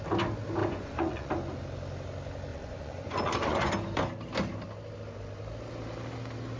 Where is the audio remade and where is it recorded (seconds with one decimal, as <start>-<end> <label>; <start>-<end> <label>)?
0.0-0.6 recorded; 0.6-1.3 remade; 1.3-2.5 recorded; 2.5-3.7 remade; 3.7-6.6 recorded